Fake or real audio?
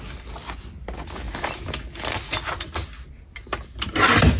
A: real